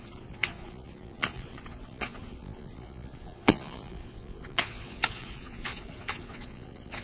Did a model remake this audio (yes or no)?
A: yes